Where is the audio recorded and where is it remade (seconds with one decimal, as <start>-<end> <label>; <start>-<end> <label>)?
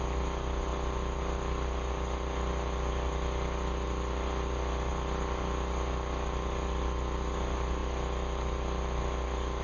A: 0.0-9.6 recorded